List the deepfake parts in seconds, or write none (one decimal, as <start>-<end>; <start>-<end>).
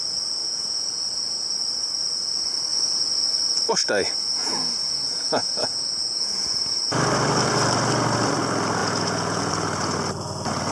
0.4-1.0; 4.4-6.9; 8.8-9.5